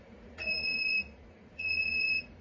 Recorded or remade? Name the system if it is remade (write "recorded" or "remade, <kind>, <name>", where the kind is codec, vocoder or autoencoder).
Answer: remade, vocoder, Vocos